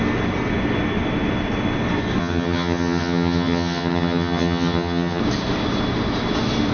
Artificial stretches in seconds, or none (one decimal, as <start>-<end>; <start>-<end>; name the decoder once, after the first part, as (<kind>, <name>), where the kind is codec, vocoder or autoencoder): 2.2-5.2 (vocoder, HiFi-GAN)